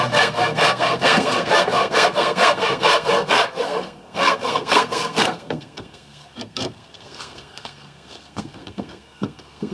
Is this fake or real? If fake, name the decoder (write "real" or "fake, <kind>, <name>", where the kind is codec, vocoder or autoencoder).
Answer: fake, codec, SNAC